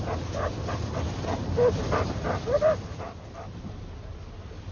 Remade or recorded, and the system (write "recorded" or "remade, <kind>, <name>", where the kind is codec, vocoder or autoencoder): recorded